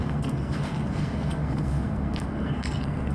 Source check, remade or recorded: remade